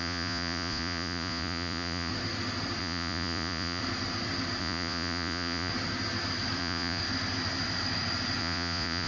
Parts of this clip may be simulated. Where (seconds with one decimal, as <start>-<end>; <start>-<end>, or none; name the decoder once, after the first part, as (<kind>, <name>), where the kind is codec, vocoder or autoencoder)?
0.0-2.1 (vocoder, Vocos); 2.8-3.8; 4.6-5.7; 6.6-7.0; 8.4-9.1